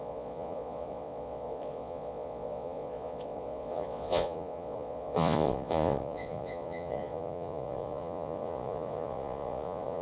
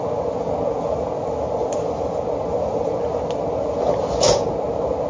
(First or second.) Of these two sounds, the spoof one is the first